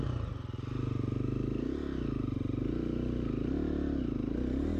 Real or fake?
real